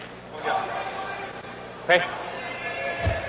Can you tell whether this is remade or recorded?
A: recorded